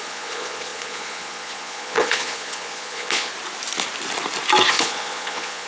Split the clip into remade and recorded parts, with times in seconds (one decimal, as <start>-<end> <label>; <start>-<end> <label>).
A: 0.0-3.3 remade; 3.3-4.7 recorded; 4.7-5.7 remade